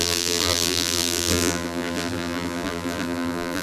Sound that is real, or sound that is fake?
fake